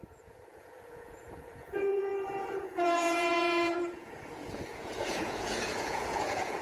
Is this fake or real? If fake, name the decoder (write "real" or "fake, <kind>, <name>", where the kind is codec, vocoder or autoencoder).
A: fake, vocoder, Vocos